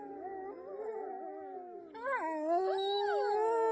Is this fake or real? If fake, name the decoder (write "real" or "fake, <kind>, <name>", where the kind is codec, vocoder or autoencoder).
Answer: real